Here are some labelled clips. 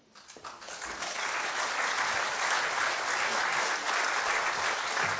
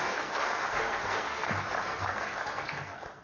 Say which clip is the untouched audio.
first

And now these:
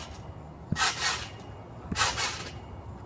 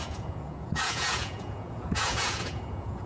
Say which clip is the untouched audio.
first